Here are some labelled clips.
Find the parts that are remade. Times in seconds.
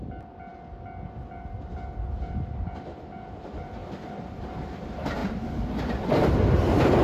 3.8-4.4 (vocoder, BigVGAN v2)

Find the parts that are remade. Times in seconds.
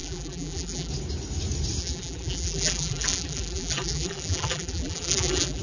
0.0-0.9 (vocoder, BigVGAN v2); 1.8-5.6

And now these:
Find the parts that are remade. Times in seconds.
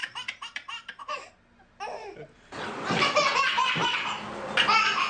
0.0-1.3 (vocoder, BigVGAN v2); 2.0-3.3; 3.8-5.1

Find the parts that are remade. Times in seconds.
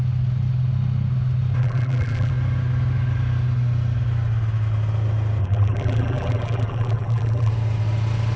1.6-2.3 (vocoder, BigVGAN v2); 5.4-7.5